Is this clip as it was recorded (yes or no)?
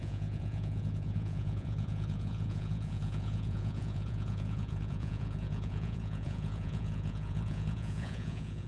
no